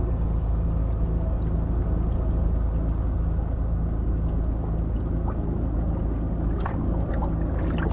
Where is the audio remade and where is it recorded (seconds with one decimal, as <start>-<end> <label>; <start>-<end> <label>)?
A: 0.0-7.9 recorded